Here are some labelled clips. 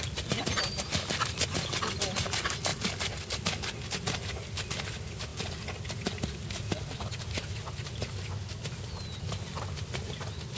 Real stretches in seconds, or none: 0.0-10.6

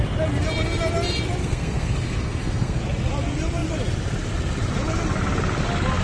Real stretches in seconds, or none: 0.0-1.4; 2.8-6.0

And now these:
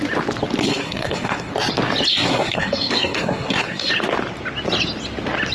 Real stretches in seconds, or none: 0.0-0.6; 1.5-2.1; 3.9-5.5

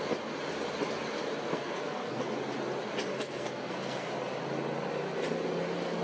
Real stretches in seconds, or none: 0.0-1.5; 2.2-3.1; 4.1-6.0

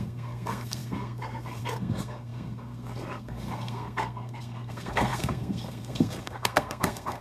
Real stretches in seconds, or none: none

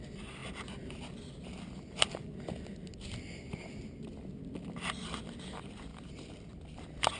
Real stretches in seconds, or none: 0.0-7.2

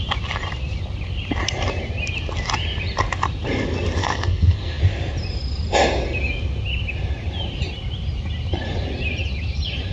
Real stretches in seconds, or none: 0.0-4.0; 4.8-9.9